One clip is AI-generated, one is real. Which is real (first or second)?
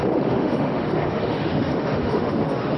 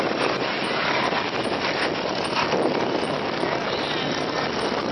second